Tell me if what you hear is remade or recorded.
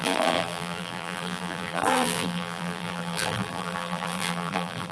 remade